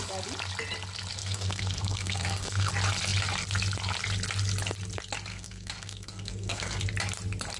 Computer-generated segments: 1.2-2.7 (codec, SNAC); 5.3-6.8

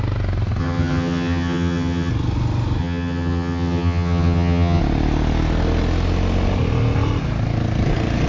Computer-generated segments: 0.6-2.1 (vocoder, HiFi-GAN); 2.8-4.8